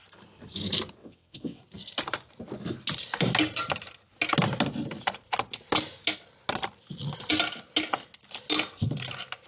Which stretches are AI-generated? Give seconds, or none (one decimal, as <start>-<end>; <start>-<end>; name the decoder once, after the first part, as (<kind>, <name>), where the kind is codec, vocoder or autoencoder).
1.0-1.6 (vocoder, WaveNeXt)